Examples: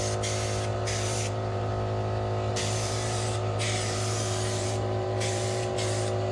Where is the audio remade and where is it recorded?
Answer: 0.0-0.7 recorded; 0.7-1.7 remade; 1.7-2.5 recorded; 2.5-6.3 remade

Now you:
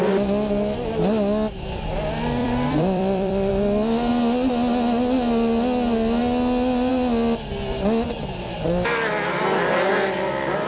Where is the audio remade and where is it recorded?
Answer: 0.0-2.4 recorded; 2.4-3.5 remade; 3.5-10.7 recorded

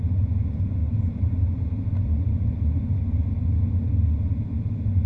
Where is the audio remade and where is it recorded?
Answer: 0.0-0.8 recorded; 0.8-3.9 remade; 3.9-5.1 recorded

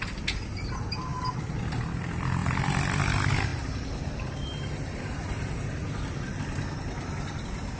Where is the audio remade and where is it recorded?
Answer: 0.0-2.4 recorded; 2.4-3.0 remade; 3.0-3.5 recorded; 3.5-6.4 remade; 6.4-7.8 recorded

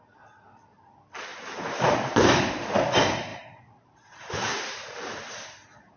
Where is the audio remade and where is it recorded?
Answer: 0.0-1.3 recorded; 1.3-2.3 remade; 2.3-3.3 recorded; 3.3-5.3 remade; 5.3-6.0 recorded

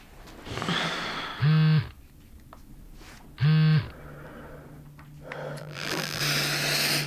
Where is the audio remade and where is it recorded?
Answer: 0.0-5.6 recorded; 5.6-6.2 remade; 6.2-7.1 recorded

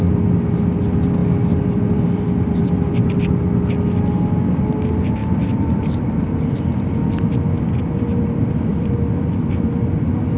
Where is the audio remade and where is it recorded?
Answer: 0.0-1.2 recorded; 1.2-3.1 remade; 3.1-5.2 recorded; 5.2-6.5 remade; 6.5-8.7 recorded; 8.7-9.4 remade; 9.4-10.4 recorded